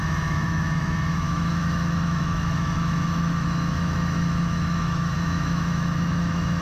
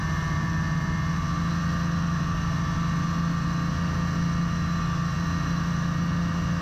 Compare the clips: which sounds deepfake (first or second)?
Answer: first